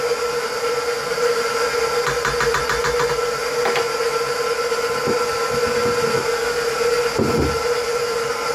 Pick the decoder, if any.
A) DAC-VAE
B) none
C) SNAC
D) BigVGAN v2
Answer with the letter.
B